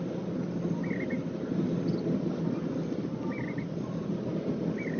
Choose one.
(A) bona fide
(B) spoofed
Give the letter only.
A